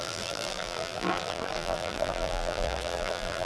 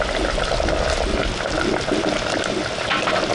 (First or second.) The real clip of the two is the second